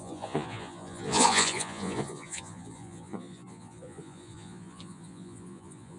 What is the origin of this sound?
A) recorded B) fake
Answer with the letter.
B